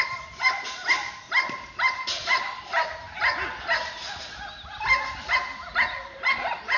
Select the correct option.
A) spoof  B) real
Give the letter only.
B